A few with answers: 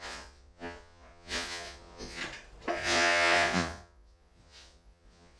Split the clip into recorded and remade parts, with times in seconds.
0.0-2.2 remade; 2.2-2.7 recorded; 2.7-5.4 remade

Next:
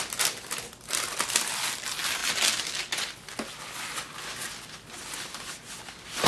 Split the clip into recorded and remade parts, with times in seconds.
0.0-6.3 recorded

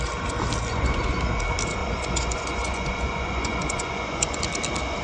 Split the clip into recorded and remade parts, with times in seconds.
0.0-0.7 recorded; 0.7-1.2 remade; 1.2-1.8 recorded; 1.8-4.4 remade; 4.4-5.0 recorded

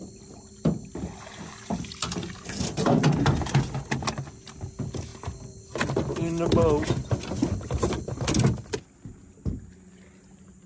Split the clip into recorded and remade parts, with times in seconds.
0.0-10.7 recorded

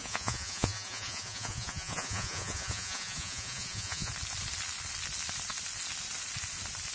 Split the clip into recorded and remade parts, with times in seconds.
0.0-4.1 remade; 4.1-6.9 recorded